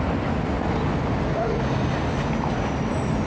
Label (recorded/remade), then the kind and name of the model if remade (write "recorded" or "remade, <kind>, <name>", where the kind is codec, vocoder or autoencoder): recorded